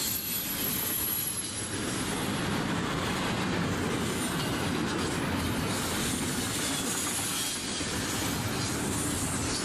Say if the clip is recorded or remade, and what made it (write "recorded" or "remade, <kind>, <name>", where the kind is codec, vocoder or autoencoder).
recorded